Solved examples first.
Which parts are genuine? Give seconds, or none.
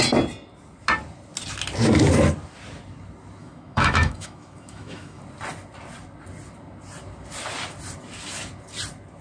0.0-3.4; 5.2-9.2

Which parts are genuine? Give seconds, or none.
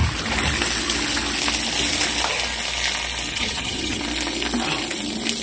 0.0-3.3; 4.0-5.4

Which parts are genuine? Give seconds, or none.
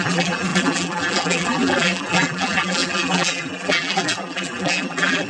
none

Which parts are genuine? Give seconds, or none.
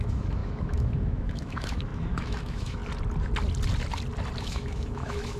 2.8-4.4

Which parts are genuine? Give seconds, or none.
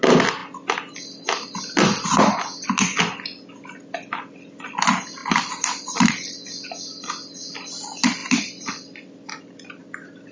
0.0-5.2; 6.1-8.2; 9.8-10.3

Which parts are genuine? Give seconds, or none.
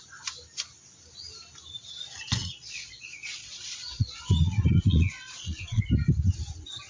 0.0-2.4; 5.8-6.9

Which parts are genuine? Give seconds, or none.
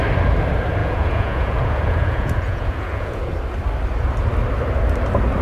0.0-0.8; 3.3-5.4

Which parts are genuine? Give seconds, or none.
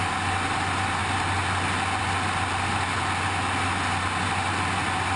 0.0-5.2